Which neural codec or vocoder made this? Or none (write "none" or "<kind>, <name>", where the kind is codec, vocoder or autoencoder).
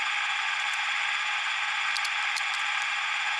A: none